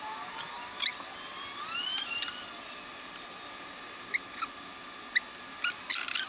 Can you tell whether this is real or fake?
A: real